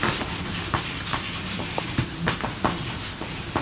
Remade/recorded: recorded